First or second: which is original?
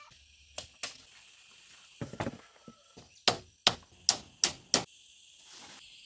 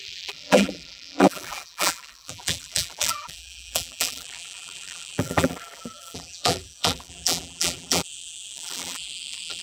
first